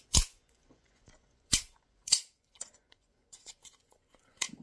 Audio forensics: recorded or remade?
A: remade